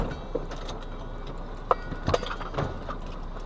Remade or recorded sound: recorded